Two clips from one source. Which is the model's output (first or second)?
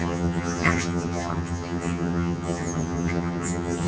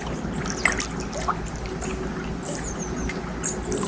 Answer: first